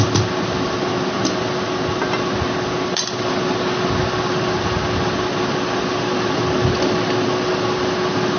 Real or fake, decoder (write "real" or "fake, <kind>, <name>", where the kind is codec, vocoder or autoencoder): real